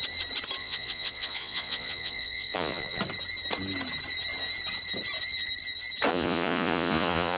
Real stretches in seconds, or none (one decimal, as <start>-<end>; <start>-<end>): 0.0-0.6; 3.0-6.1